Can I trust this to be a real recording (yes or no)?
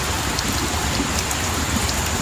yes